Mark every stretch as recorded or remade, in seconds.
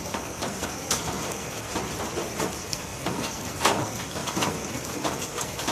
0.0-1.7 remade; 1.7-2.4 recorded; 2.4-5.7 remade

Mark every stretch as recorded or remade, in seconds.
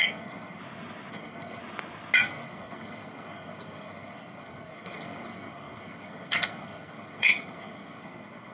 0.0-0.6 remade; 0.6-1.1 recorded; 1.1-1.6 remade; 1.6-2.2 recorded; 2.2-8.5 remade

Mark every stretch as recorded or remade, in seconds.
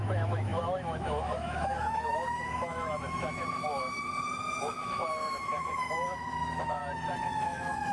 0.0-6.8 remade; 6.8-7.4 recorded; 7.4-7.9 remade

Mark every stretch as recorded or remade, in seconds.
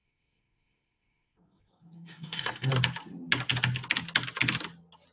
0.0-2.7 remade; 2.7-5.1 recorded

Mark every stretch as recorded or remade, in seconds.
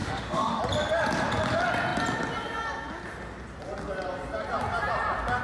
0.0-0.6 remade; 0.6-5.4 recorded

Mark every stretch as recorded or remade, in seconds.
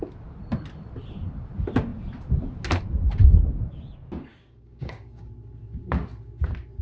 0.0-4.3 recorded; 4.3-5.3 remade; 5.3-6.8 recorded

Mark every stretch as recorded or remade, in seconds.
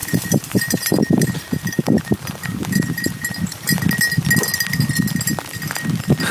0.0-3.8 remade; 3.8-6.3 recorded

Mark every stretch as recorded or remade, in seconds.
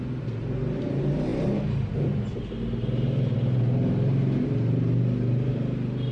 0.0-6.1 recorded